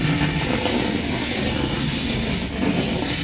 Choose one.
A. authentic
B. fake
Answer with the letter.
A